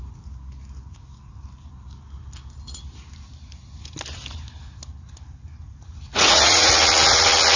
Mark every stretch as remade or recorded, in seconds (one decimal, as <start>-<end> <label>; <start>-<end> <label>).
0.0-6.1 recorded; 6.1-6.7 remade; 6.7-7.6 recorded